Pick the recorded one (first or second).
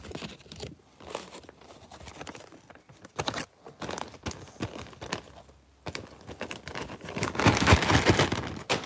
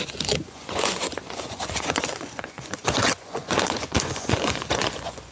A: first